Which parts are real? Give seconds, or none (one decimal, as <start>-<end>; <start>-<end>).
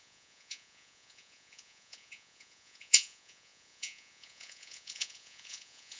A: none